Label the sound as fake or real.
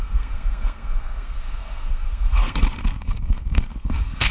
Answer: fake